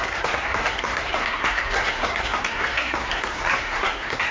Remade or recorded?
remade